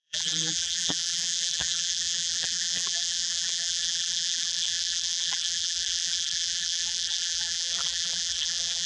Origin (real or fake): fake